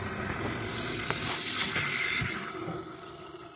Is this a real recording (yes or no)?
no